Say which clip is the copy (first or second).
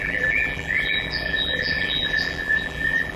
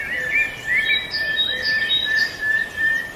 first